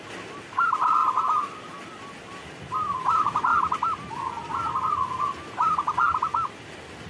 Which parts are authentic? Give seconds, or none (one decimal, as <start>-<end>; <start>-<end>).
0.0-7.1